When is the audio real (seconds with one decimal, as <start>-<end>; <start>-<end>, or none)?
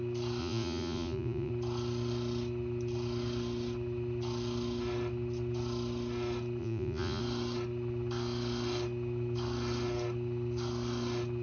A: 0.0-0.4; 1.5-6.6; 7.2-11.4